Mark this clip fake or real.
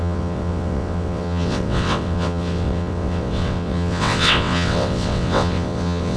fake